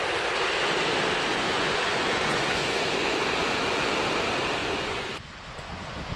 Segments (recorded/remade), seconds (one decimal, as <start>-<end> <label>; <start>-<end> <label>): 0.0-1.3 recorded; 1.3-4.0 remade; 4.0-4.6 recorded; 4.6-6.2 remade